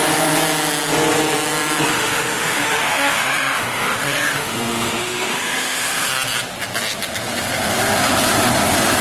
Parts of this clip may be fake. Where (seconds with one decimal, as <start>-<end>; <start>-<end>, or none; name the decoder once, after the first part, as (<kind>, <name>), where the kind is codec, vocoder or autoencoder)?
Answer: 1.9-6.1 (autoencoder, DAC-VAE)